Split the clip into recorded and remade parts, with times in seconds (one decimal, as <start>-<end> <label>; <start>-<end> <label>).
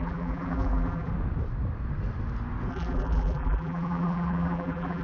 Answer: 0.0-1.1 remade; 1.1-2.7 recorded; 2.7-5.0 remade